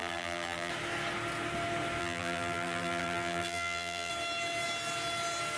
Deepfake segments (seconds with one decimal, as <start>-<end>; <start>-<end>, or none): 0.0-0.7; 2.0-4.1